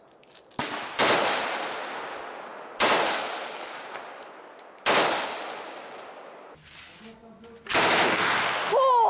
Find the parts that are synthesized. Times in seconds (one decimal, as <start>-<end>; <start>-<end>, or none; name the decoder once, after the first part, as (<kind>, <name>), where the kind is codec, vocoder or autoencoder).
none